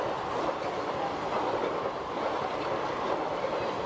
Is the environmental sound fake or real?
real